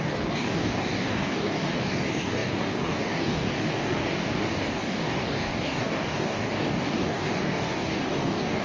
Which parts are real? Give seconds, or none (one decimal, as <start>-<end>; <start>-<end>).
none

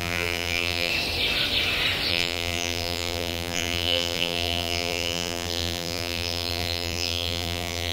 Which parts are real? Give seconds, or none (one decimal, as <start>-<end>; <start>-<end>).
0.9-2.1

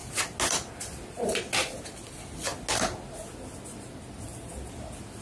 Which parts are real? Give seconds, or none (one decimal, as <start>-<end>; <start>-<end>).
0.0-5.2